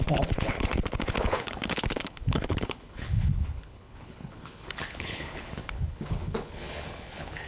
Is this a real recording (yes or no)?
no